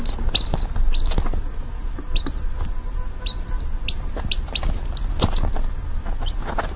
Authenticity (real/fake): real